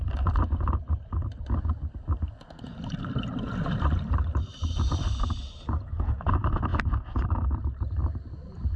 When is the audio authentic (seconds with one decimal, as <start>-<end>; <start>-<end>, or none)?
0.0-8.8